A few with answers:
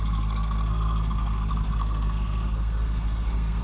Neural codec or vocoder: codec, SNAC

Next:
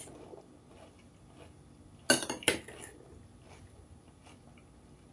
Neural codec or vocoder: none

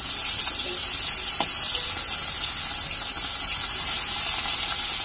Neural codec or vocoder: none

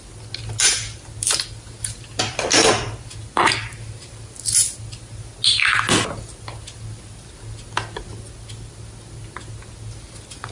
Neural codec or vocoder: none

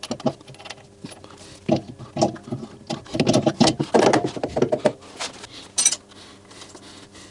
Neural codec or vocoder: none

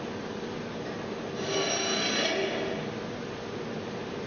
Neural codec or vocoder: none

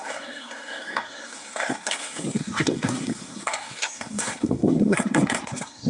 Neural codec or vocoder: codec, SNAC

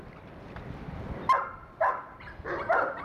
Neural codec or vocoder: none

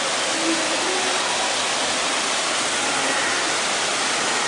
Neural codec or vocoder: none